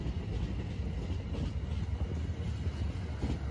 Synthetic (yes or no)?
no